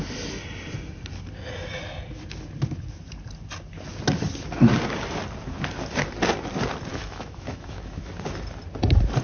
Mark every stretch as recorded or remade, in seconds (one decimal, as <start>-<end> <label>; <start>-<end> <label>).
0.0-6.9 recorded; 6.9-8.1 remade; 8.1-9.2 recorded